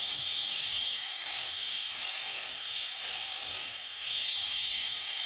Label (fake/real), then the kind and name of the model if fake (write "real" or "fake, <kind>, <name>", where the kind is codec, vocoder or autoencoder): fake, codec, DAC